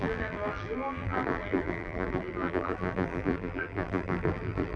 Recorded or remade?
remade